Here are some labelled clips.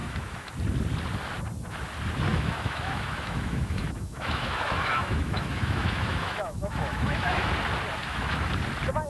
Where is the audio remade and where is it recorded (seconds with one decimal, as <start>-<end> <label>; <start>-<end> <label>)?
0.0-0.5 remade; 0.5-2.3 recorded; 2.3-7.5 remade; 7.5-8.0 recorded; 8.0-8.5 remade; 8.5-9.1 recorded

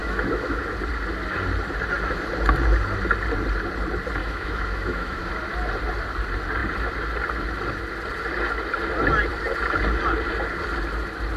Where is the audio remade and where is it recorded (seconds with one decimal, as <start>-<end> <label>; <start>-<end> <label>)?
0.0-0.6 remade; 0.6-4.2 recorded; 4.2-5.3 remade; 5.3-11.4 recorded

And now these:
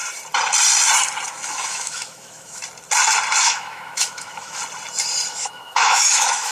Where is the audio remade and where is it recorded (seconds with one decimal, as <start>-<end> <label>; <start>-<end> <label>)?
0.0-1.3 recorded; 1.3-2.6 remade; 2.6-3.4 recorded; 3.4-4.6 remade; 4.6-5.3 recorded; 5.3-6.5 remade

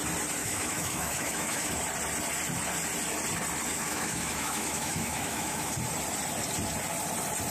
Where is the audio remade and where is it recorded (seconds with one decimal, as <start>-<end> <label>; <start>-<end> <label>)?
0.0-0.4 recorded; 0.4-1.8 remade; 1.8-3.7 recorded; 3.7-5.7 remade; 5.7-7.5 recorded

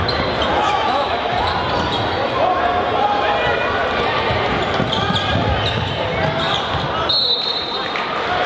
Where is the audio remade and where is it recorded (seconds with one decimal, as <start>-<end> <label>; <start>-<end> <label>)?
0.0-0.5 recorded; 0.5-1.3 remade; 1.3-8.5 recorded

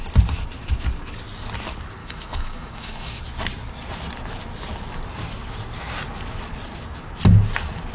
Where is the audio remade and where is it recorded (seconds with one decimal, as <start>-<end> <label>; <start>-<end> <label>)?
0.0-2.0 recorded; 2.0-3.2 remade; 3.2-7.9 recorded

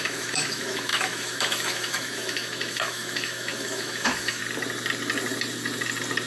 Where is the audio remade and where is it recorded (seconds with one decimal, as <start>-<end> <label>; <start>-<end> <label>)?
0.0-4.4 remade; 4.4-6.3 recorded

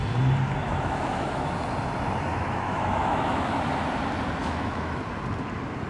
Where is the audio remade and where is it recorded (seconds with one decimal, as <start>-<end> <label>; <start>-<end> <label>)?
0.0-0.6 recorded; 0.6-1.5 remade; 1.5-2.3 recorded; 2.3-3.6 remade; 3.6-4.4 recorded; 4.4-5.0 remade; 5.0-5.9 recorded